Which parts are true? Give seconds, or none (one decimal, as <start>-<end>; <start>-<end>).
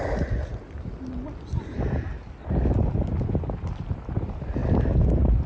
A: 0.0-5.5